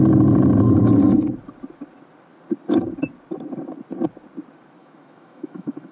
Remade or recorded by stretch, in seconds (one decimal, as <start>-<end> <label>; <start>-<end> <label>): 0.0-4.8 recorded; 4.8-5.9 remade